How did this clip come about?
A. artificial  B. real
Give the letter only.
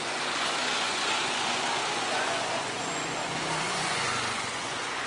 A